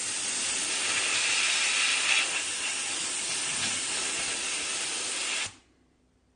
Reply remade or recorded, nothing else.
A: recorded